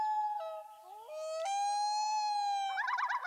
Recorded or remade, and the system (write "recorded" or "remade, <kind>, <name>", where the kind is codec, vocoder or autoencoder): recorded